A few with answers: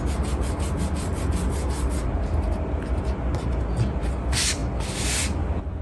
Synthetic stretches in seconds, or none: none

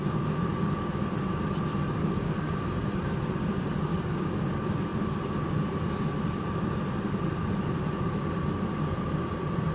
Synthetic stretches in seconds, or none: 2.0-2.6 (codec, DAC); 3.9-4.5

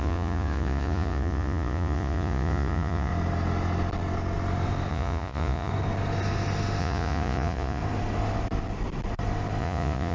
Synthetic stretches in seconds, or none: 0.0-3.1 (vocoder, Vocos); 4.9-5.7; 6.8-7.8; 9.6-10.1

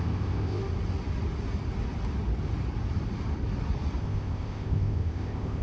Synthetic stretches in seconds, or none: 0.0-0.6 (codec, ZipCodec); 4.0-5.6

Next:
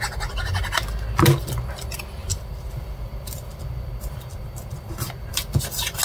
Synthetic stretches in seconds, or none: 2.3-6.0 (vocoder, BigVGAN v2)

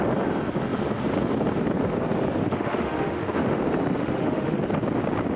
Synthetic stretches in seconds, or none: 2.4-3.6 (autoencoder, DAC-VAE); 4.0-4.6